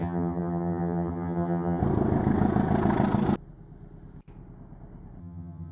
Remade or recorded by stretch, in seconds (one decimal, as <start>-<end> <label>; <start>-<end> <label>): 0.0-1.8 remade; 1.8-5.2 recorded; 5.2-5.7 remade